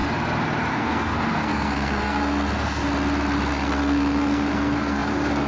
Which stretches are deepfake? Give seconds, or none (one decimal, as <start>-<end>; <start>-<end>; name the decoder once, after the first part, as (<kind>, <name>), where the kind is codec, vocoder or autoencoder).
0.7-2.8 (codec, SNAC); 3.5-5.5